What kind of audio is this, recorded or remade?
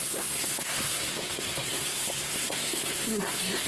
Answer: remade